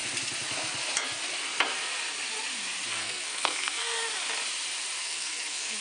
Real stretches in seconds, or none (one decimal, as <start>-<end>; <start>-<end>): 0.0-2.9; 4.0-5.0